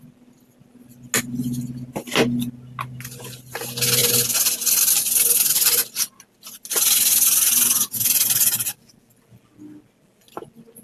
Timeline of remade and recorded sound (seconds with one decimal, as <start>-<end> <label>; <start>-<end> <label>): 0.0-10.8 recorded